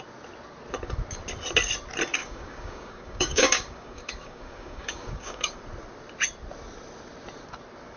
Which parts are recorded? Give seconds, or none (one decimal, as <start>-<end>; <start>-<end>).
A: 0.0-2.2; 5.6-8.0